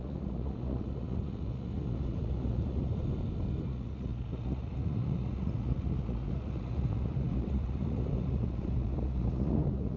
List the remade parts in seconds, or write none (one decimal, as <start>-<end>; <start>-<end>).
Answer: 0.0-3.0; 3.6-10.0